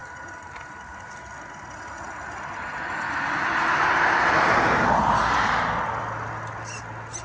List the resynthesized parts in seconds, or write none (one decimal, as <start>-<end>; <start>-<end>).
0.0-1.1

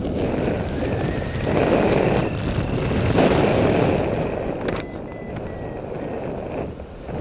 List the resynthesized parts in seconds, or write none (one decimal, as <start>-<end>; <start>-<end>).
none